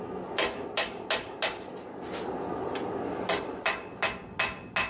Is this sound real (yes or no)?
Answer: yes